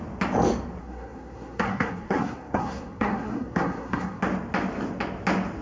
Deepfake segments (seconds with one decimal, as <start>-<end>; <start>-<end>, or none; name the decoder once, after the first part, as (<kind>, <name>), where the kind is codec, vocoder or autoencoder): 0.8-4.2 (codec, SNAC)